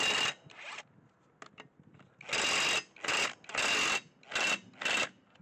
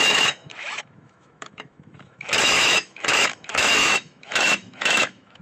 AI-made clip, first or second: second